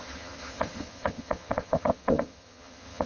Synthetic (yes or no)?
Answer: yes